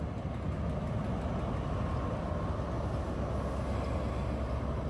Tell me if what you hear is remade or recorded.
recorded